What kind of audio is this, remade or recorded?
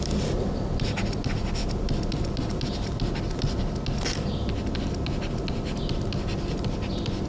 recorded